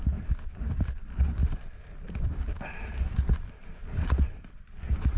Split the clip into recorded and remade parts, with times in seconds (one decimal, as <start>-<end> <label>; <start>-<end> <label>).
0.0-5.2 remade